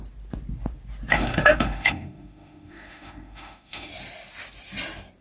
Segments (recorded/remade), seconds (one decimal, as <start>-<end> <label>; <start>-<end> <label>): 0.0-1.1 recorded; 1.1-3.9 remade; 3.9-5.2 recorded